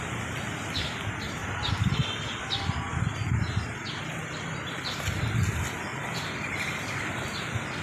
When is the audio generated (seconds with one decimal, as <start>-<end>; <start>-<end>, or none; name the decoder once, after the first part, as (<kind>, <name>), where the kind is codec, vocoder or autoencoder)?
5.9-7.8 (vocoder, BigVGAN v2)